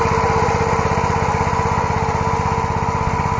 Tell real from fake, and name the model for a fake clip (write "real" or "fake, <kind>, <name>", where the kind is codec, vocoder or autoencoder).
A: real